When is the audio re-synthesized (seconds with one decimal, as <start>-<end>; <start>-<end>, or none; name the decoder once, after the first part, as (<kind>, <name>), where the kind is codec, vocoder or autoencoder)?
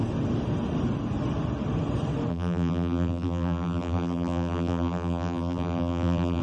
2.3-6.4 (vocoder, BigVGAN v2)